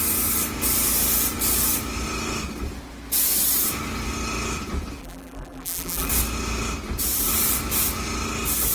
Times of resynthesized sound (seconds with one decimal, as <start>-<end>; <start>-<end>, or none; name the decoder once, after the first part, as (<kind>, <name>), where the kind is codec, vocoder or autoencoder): 5.0-6.1 (vocoder, BigVGAN v2)